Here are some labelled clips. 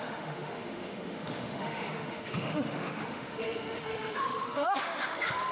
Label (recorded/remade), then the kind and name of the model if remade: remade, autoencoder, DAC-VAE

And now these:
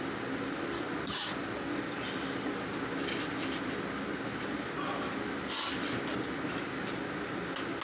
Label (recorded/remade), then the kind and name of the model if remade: recorded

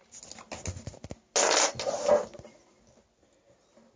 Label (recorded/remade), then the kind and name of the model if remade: recorded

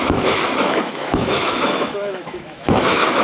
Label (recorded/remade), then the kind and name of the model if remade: remade, autoencoder, DAC-VAE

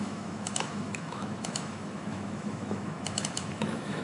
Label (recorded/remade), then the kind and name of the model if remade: remade, autoencoder, DAC-VAE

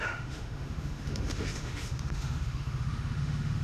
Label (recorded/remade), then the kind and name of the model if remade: remade, autoencoder, DAC-VAE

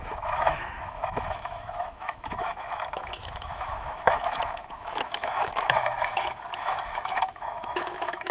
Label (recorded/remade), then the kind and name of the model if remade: remade, autoencoder, DAC-VAE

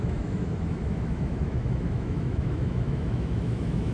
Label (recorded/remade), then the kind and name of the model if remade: remade, autoencoder, DAC-VAE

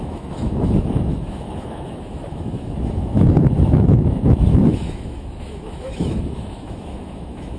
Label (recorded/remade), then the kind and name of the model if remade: remade, autoencoder, DAC-VAE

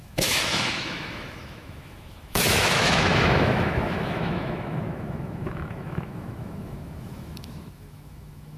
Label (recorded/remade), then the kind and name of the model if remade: remade, autoencoder, DAC-VAE